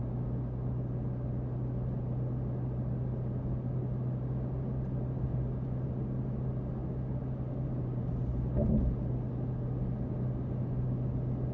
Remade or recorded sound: recorded